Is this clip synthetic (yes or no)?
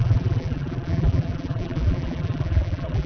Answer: yes